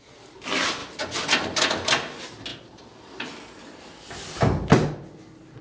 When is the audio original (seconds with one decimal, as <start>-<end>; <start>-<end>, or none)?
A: 0.0-0.8; 1.4-2.5; 3.8-5.6